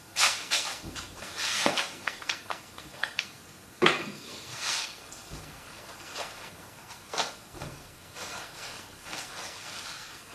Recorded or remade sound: remade